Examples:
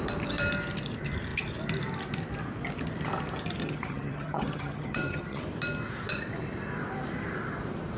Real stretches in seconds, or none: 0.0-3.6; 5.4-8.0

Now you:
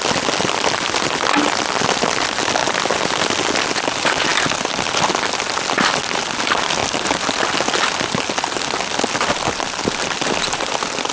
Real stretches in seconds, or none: 0.0-11.1